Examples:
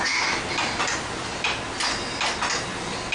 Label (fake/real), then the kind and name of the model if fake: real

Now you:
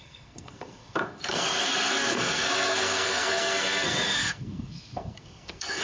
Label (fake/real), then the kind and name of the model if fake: fake, codec, SNAC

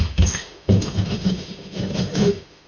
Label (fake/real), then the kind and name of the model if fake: fake, autoencoder, DAC-VAE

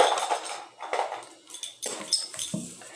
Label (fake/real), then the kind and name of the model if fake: real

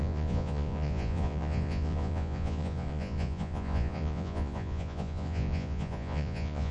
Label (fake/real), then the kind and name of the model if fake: fake, vocoder, Vocos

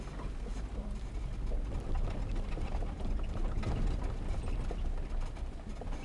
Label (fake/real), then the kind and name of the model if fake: real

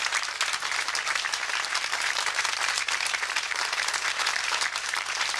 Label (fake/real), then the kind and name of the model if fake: fake, vocoder, BigVGAN v2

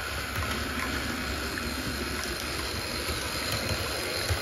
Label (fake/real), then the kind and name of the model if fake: real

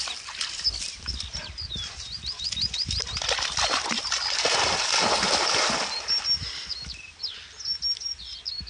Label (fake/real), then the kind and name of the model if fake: real